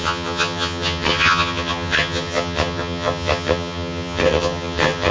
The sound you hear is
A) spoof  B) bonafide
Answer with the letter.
A